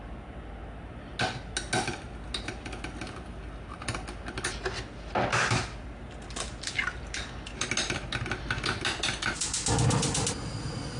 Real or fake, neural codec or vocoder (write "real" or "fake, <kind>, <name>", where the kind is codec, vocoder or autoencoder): real